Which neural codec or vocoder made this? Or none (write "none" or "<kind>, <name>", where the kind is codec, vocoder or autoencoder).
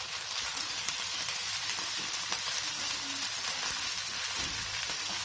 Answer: none